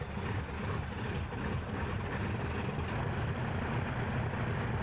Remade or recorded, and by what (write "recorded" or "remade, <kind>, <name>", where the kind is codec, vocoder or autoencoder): recorded